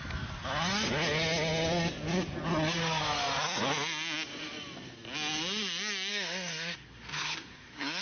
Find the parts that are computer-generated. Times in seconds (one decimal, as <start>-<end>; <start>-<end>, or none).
6.1-8.0